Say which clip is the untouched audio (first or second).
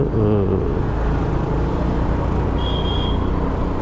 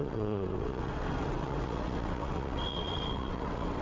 first